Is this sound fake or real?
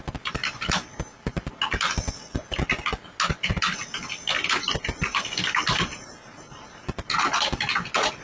real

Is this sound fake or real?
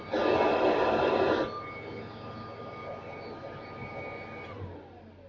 real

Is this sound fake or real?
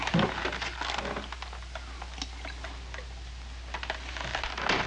real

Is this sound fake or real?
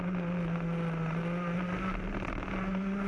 real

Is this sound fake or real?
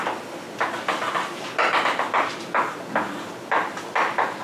real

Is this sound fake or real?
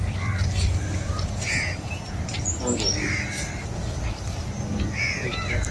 real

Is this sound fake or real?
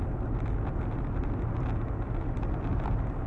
real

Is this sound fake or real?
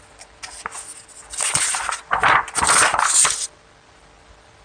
real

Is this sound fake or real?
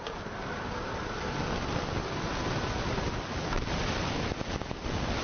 real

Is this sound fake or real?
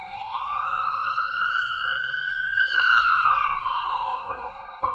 fake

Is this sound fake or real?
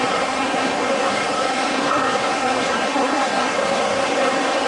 fake